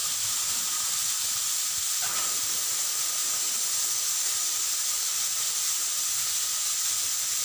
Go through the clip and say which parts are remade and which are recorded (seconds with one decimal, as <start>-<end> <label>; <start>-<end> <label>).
0.0-7.4 recorded